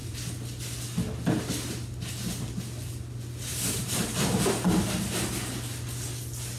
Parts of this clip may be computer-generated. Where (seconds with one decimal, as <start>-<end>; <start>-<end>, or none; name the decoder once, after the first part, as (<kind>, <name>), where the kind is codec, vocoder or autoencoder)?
3.5-4.1 (vocoder, BigVGAN v2)